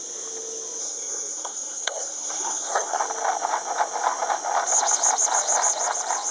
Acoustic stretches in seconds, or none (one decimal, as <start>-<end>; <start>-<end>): 0.0-0.8; 3.0-6.3